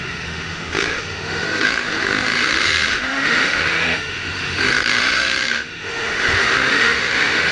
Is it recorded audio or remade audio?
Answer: remade